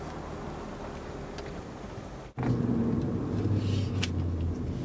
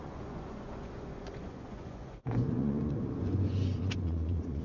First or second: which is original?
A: first